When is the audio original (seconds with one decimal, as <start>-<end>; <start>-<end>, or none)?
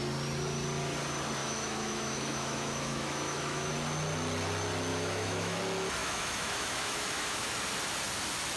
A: 0.0-1.4; 3.7-4.9; 5.6-6.0; 7.5-8.6